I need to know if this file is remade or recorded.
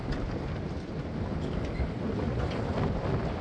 recorded